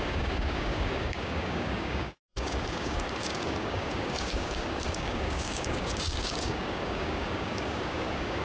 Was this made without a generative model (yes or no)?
no